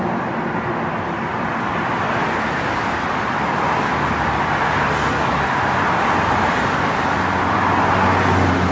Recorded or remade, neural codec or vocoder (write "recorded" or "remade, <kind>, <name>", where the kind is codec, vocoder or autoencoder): recorded